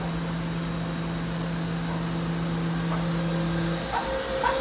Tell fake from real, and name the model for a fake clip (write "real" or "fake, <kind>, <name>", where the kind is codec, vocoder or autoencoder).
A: real